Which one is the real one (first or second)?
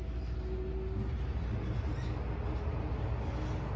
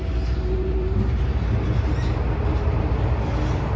first